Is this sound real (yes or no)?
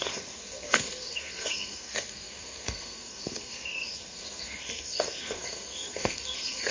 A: no